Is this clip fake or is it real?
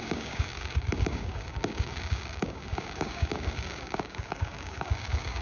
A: fake